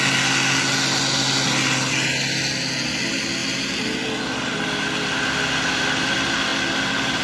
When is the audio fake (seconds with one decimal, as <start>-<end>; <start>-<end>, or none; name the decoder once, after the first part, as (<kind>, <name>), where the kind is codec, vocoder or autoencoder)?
none